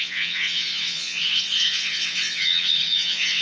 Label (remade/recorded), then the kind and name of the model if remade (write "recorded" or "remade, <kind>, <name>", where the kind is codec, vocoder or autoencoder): remade, vocoder, WaveNeXt